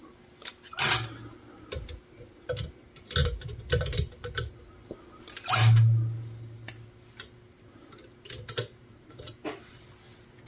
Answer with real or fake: real